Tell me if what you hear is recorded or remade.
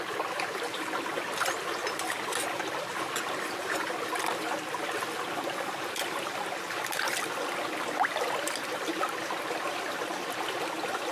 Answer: recorded